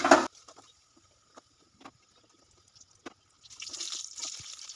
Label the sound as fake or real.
real